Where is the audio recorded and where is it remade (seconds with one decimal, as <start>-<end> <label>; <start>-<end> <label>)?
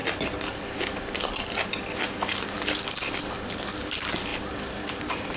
0.0-5.4 recorded